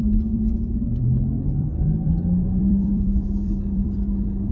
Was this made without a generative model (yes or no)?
no